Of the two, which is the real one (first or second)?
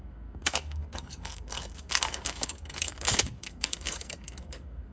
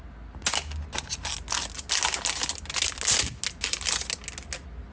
second